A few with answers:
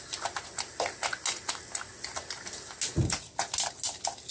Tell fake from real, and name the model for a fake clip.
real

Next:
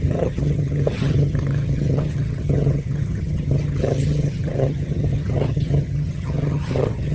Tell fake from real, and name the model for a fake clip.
fake, vocoder, HiFi-GAN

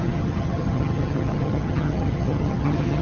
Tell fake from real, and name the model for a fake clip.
fake, vocoder, HiFi-GAN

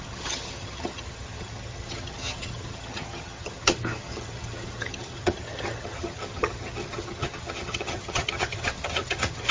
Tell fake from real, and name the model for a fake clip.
fake, vocoder, HiFi-GAN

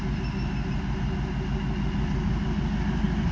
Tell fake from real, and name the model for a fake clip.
real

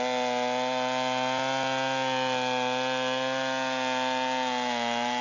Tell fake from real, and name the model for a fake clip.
real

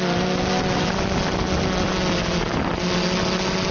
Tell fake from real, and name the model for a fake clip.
real